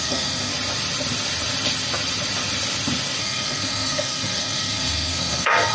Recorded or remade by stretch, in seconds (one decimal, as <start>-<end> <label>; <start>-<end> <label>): 0.0-0.5 remade; 0.5-3.2 recorded; 3.2-5.7 remade